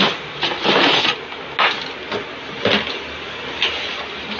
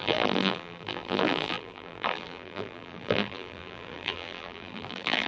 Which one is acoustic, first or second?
first